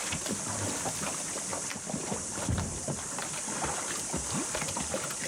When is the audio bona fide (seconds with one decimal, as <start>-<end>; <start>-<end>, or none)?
0.0-5.3